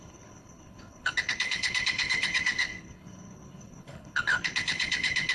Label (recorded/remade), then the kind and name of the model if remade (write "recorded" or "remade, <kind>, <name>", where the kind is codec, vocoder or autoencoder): remade, codec, HILCodec